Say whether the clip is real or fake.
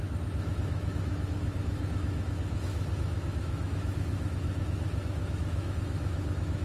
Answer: fake